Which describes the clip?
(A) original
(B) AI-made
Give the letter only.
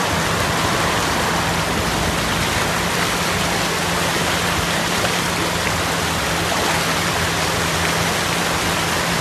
A